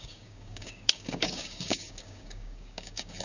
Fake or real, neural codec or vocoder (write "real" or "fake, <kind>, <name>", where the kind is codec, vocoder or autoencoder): fake, codec, DAC